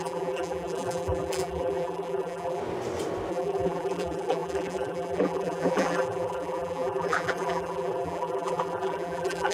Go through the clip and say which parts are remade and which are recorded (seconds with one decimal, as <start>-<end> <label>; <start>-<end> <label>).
0.0-2.6 remade; 2.6-3.3 recorded; 3.3-9.5 remade